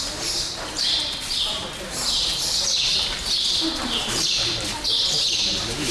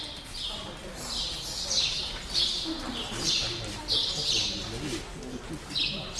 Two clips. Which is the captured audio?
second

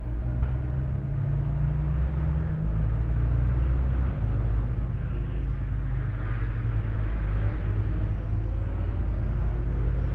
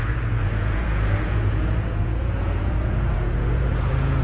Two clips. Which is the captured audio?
first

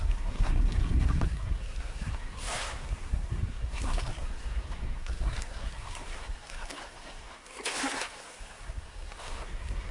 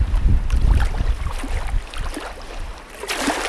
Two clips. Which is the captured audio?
second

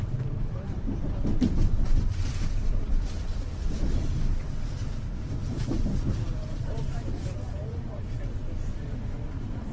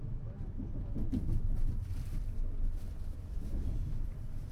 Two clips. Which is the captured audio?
second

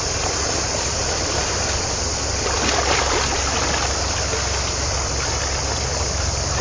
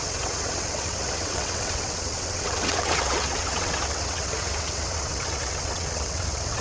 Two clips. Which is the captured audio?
first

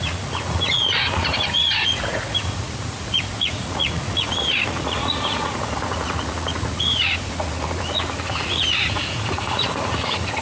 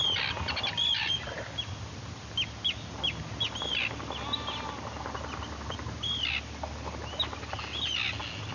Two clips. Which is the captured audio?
second